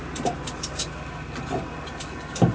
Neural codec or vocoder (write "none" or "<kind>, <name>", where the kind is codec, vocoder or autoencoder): none